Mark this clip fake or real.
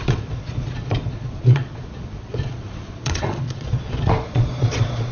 fake